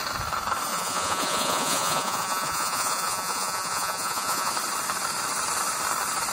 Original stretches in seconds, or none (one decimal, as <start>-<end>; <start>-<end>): 0.0-0.7; 4.5-6.3